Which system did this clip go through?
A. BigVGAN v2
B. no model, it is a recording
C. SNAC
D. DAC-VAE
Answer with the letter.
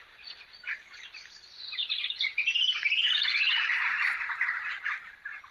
B